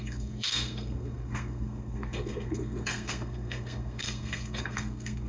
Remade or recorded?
remade